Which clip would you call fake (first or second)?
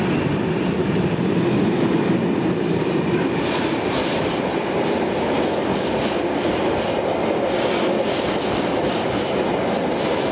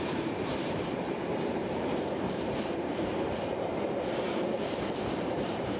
second